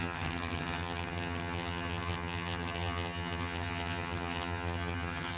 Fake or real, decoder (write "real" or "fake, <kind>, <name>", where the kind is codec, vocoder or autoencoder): fake, vocoder, HiFi-GAN